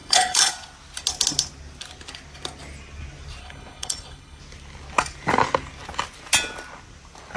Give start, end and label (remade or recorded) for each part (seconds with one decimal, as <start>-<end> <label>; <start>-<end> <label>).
0.0-0.5 remade; 0.5-3.4 recorded; 3.4-4.4 remade; 4.4-7.4 recorded